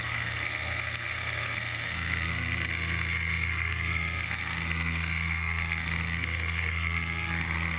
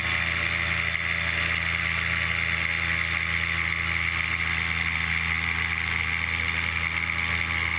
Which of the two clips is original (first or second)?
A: second